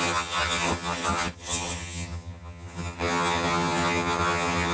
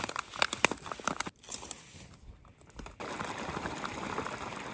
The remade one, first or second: first